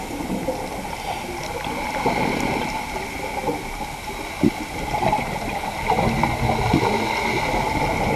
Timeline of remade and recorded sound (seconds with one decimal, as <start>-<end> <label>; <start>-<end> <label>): 0.0-8.2 recorded